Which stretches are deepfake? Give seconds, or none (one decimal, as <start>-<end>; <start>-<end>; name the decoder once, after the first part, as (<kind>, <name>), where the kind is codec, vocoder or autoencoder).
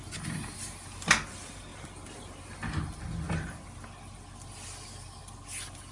none